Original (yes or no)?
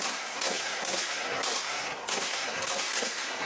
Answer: no